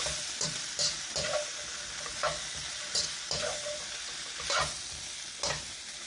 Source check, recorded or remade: recorded